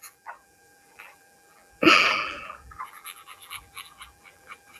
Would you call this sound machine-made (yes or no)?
yes